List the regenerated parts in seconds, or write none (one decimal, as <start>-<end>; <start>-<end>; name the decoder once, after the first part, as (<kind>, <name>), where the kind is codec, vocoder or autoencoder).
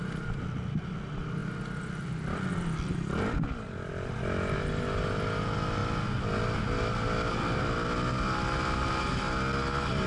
none